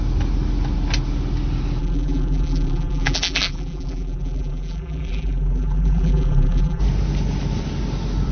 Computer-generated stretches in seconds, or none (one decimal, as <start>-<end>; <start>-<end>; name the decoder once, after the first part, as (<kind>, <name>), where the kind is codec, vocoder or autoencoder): 1.8-6.8 (vocoder, BigVGAN v2)